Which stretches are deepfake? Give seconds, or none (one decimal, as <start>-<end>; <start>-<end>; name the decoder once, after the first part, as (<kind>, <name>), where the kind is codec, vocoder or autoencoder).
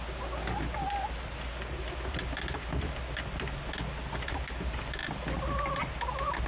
none